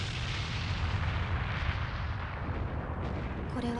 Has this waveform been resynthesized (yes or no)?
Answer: no